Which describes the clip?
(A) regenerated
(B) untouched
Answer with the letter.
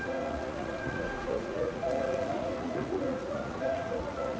A